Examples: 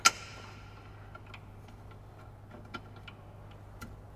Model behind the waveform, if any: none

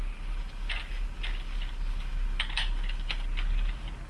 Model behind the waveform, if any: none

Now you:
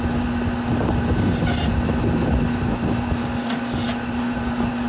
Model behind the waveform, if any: none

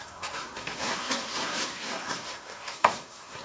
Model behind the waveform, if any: codec, SNAC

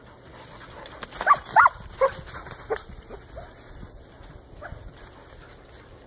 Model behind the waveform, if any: none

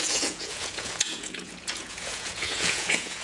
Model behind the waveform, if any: vocoder, Vocos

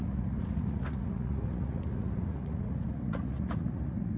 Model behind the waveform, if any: vocoder, Vocos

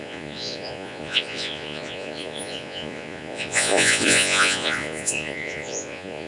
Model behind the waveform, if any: vocoder, Vocos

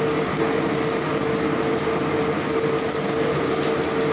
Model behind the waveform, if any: none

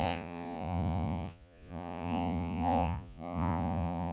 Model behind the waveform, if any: vocoder, Vocos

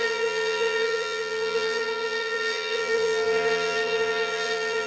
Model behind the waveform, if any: vocoder, BigVGAN v2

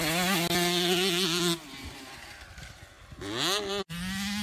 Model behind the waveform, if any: none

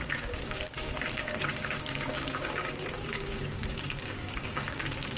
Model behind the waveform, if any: codec, DAC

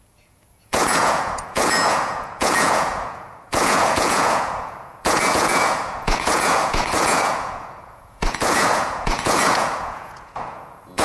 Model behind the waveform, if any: vocoder, Vocos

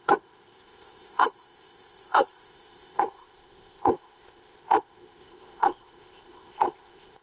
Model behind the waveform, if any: codec, ZipCodec